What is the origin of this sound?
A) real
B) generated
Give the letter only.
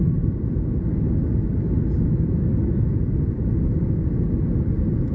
A